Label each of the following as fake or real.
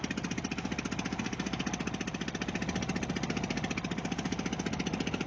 real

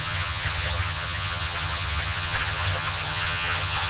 fake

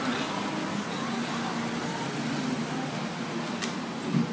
real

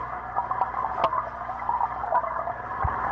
real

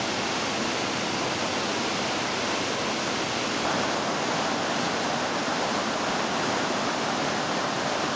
real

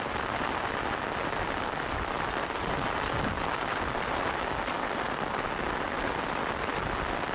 real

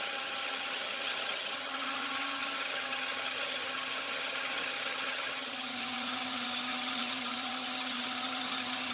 fake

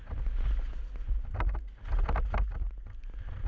real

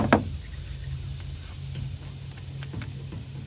real